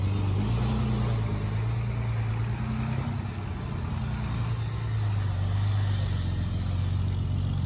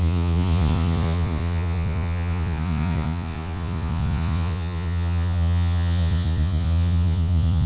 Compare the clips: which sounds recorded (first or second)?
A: first